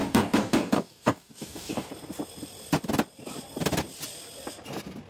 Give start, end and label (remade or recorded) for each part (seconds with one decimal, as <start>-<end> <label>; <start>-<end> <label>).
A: 0.0-1.9 remade; 1.9-5.1 recorded